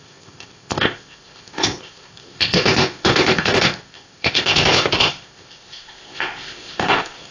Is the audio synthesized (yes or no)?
yes